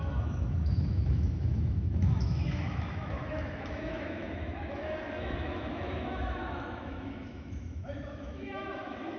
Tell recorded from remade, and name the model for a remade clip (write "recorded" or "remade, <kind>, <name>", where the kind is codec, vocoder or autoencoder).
remade, autoencoder, DAC-VAE